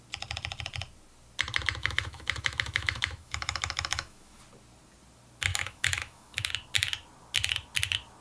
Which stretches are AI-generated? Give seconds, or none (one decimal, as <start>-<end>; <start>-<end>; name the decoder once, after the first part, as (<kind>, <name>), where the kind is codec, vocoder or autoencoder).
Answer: 1.8-4.4 (autoencoder, DAC-VAE); 5.5-6.5